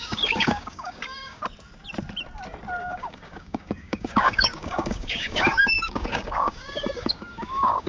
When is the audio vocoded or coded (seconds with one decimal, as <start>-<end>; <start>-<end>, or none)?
0.0-1.4; 2.8-7.9